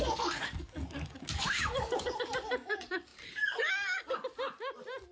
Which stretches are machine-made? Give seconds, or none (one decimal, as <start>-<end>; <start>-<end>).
0.0-4.2